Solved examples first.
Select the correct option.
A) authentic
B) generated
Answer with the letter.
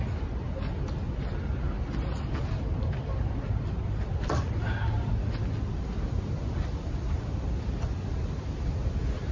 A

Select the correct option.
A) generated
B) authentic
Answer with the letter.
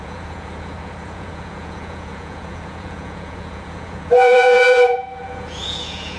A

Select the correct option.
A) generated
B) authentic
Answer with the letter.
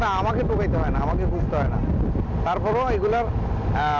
B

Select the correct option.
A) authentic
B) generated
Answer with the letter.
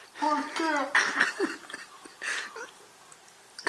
A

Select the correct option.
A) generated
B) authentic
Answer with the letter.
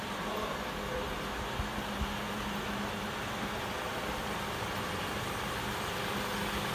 B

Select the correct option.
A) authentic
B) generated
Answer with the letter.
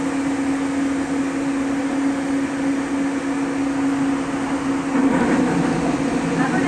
A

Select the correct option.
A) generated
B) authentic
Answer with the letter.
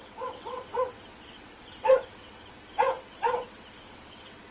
A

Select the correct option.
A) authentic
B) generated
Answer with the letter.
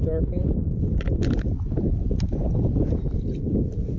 B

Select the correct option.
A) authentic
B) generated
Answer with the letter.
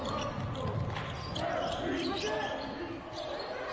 A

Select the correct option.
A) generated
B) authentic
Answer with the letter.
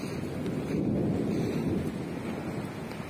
B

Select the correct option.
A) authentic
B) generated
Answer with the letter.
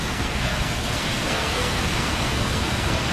B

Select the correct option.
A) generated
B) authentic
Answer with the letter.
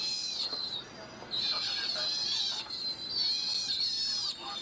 B